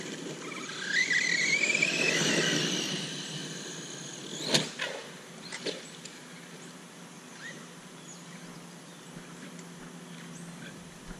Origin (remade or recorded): recorded